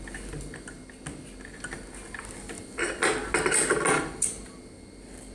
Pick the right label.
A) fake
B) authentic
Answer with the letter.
B